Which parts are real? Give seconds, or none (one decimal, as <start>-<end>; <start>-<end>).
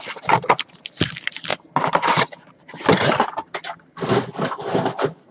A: 0.0-5.3